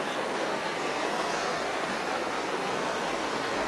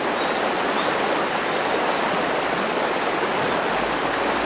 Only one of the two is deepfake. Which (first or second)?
first